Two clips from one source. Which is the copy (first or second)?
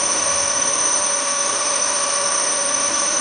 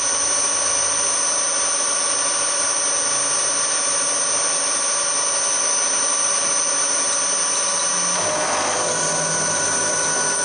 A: first